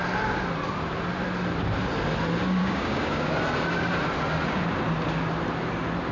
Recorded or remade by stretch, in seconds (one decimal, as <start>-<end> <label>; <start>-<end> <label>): 0.0-2.6 recorded; 2.6-3.3 remade; 3.3-6.1 recorded